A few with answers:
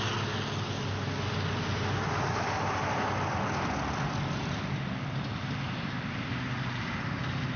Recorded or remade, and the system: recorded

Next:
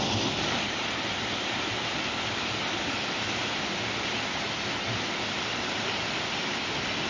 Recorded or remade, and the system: recorded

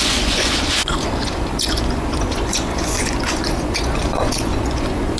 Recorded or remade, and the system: remade, vocoder, Vocos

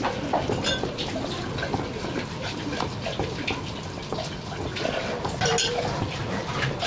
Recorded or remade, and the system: recorded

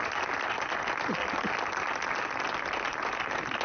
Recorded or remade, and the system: recorded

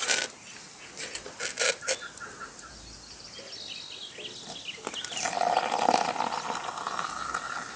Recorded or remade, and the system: recorded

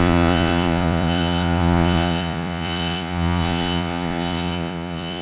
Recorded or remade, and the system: remade, vocoder, Vocos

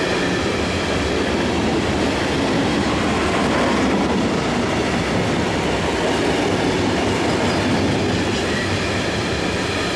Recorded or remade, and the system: recorded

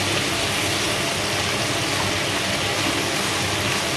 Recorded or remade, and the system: recorded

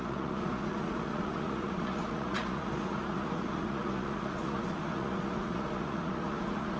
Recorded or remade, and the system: remade, vocoder, Vocos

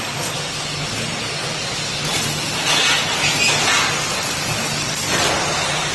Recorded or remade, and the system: recorded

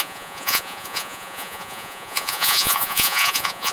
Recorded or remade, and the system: remade, vocoder, Vocos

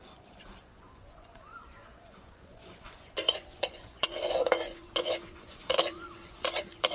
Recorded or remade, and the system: remade, vocoder, Vocos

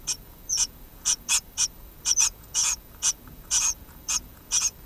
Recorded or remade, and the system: remade, vocoder, Vocos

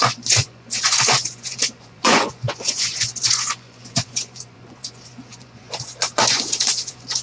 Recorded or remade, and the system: remade, vocoder, Vocos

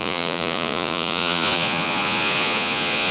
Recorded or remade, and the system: remade, vocoder, Vocos